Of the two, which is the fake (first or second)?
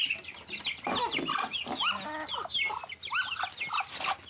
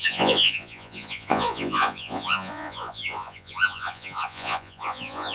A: second